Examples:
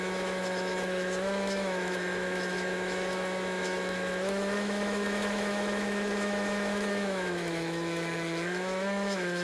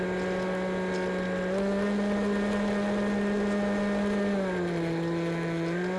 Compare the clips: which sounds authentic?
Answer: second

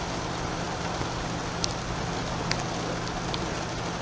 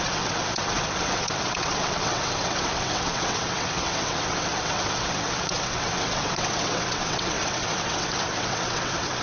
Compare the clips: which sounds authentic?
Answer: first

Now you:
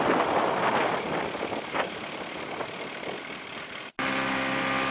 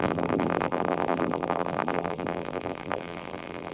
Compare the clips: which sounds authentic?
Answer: first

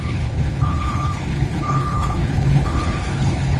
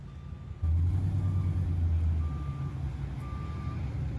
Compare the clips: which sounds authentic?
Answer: second